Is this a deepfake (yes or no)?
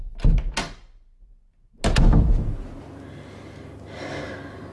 no